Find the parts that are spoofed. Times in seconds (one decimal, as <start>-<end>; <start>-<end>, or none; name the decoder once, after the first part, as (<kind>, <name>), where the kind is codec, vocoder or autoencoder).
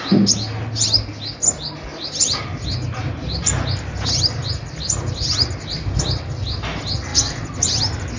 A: none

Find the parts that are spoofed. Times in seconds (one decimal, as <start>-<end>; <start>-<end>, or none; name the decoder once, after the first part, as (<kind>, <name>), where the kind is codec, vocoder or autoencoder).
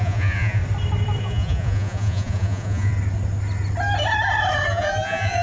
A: 0.0-0.6 (vocoder, Vocos); 1.2-2.9; 4.7-5.4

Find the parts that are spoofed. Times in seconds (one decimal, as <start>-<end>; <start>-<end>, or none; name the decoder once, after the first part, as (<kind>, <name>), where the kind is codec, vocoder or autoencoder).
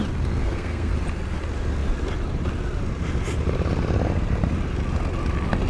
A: 0.4-0.9 (codec, SNAC)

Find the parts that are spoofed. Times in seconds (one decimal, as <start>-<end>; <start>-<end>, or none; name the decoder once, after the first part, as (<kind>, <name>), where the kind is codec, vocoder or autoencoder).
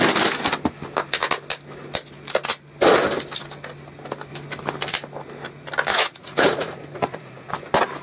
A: 5.9-7.5 (vocoder, Vocos)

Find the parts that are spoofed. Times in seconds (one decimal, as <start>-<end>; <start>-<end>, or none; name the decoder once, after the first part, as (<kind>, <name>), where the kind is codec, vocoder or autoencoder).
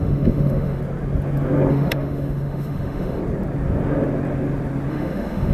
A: 0.0-0.8 (autoencoder, DAC-VAE); 1.7-3.2; 4.9-5.5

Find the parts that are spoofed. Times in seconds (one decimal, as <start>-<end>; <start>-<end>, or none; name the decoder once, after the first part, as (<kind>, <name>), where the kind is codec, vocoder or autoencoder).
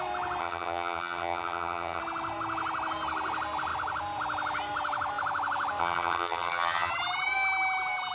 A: 0.4-2.0 (vocoder, HiFi-GAN); 5.8-6.9